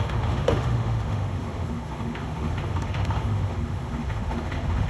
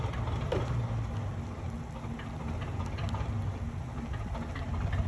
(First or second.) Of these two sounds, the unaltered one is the second